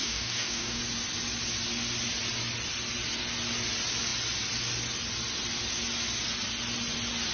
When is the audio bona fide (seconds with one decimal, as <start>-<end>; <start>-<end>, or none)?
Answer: 0.8-7.3